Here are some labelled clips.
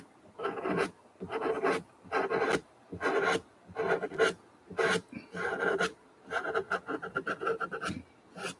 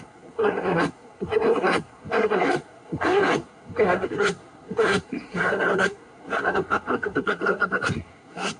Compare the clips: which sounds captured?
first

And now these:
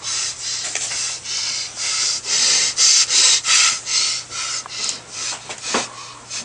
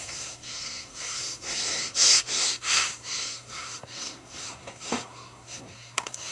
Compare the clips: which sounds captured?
first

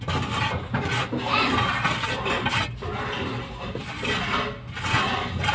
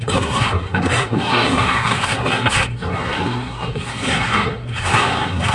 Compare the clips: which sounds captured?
first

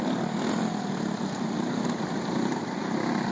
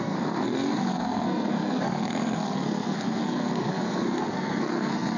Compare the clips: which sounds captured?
first